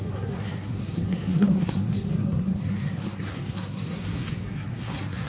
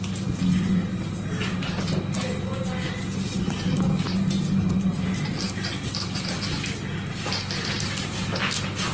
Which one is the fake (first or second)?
first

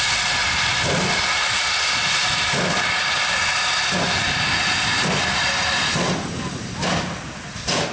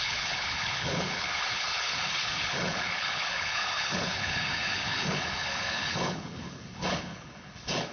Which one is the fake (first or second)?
second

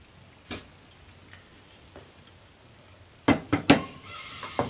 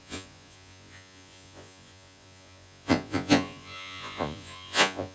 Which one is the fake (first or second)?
second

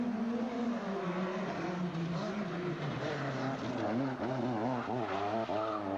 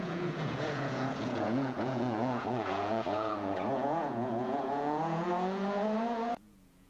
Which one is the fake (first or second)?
second